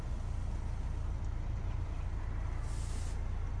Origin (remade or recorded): recorded